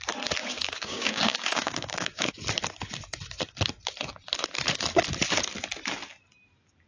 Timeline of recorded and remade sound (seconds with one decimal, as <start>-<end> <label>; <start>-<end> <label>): 0.0-0.4 recorded; 0.4-2.3 remade; 2.3-6.9 recorded